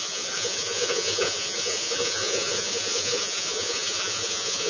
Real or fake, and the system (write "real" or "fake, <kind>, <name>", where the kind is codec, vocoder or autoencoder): fake, vocoder, Vocos